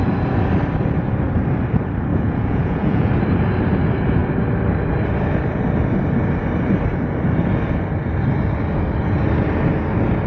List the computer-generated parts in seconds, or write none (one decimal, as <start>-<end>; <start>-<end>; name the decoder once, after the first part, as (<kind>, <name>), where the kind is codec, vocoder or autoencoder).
2.1-3.1 (vocoder, Vocos)